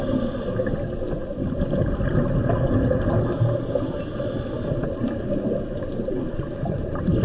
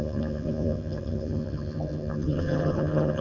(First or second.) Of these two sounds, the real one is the first